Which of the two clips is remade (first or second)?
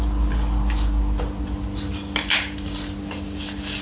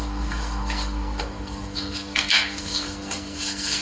second